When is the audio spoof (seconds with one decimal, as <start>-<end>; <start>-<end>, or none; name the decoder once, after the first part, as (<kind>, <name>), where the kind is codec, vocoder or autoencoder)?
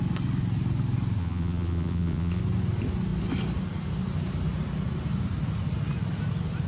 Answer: 1.2-2.4 (vocoder, Vocos)